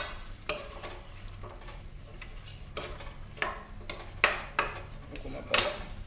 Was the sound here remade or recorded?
recorded